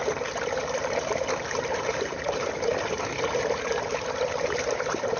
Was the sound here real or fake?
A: fake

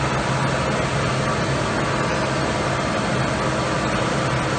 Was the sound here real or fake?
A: real